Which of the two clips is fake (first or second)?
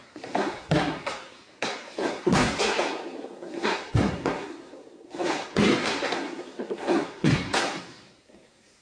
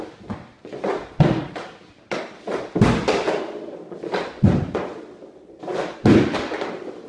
first